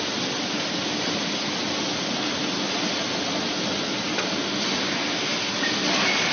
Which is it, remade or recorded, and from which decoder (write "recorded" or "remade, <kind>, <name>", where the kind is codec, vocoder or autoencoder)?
recorded